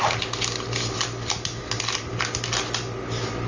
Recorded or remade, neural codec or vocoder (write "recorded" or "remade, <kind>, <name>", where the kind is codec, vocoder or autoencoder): recorded